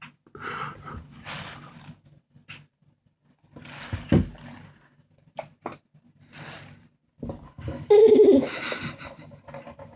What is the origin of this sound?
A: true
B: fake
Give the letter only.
A